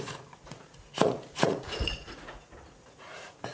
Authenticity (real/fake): fake